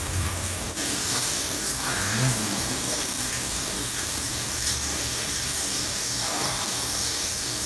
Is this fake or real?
fake